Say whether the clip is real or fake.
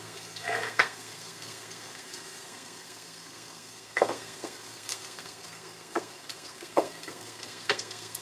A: fake